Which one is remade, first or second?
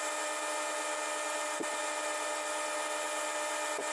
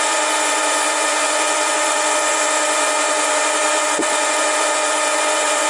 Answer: second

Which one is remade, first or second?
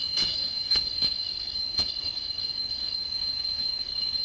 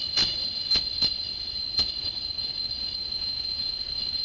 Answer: first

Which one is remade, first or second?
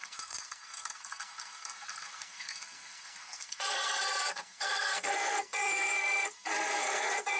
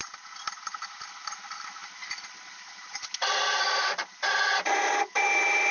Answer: first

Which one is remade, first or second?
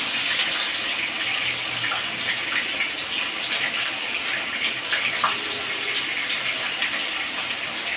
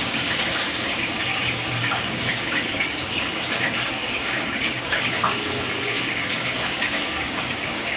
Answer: second